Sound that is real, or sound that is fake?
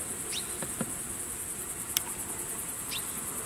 real